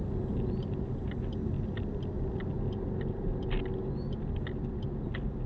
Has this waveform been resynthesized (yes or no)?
no